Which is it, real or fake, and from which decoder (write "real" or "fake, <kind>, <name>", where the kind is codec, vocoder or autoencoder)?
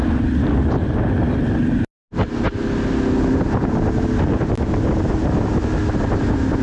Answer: real